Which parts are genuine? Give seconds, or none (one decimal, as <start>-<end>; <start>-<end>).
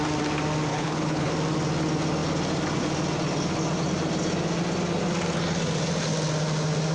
0.0-0.7; 1.3-6.9